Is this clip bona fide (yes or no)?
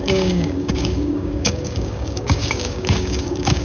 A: no